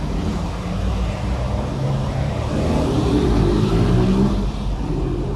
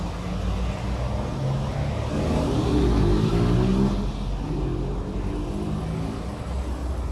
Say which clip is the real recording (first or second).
second